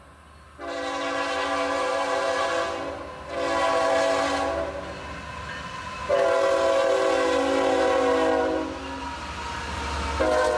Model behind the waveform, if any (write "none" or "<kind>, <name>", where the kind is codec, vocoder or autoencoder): none